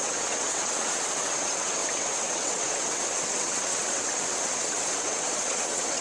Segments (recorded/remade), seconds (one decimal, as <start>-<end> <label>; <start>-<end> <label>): 0.0-6.0 remade